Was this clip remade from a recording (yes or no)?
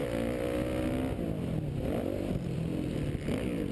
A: no